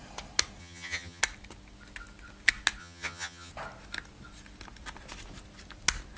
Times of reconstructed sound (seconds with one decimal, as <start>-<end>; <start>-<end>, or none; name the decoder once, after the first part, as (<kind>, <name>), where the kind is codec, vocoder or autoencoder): 0.6-1.2 (vocoder, HiFi-GAN); 2.8-3.5